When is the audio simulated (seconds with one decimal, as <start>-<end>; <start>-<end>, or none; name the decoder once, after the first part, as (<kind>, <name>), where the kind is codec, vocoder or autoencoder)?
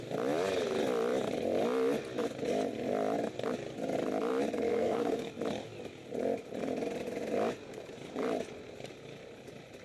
4.7-5.3 (codec, SNAC)